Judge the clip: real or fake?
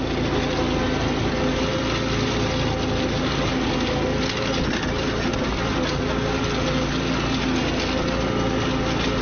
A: real